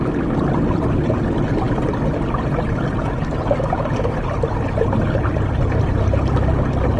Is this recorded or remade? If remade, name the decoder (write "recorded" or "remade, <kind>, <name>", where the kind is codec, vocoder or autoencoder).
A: recorded